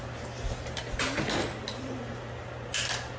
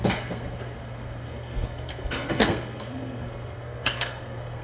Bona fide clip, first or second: first